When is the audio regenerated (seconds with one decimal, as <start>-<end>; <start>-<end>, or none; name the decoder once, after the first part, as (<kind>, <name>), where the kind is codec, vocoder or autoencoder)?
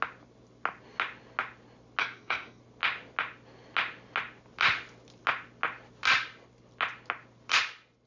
2.0-2.6 (codec, SNAC)